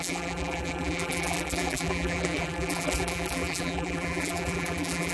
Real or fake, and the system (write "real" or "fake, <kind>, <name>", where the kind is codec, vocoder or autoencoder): fake, vocoder, BigVGAN v2